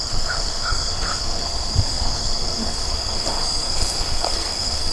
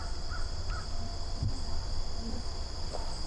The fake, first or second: first